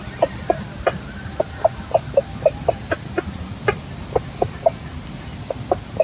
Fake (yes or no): no